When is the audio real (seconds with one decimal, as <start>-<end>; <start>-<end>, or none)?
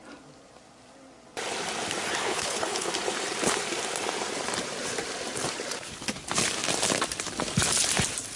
0.0-2.2; 2.9-8.4